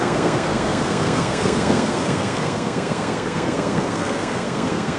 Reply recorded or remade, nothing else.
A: remade